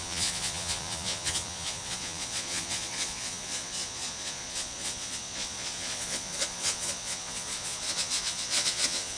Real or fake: fake